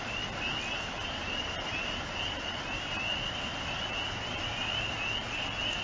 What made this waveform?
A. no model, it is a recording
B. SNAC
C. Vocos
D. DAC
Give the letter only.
A